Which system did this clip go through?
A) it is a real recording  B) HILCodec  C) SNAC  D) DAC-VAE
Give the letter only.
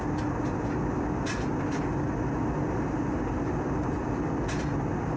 A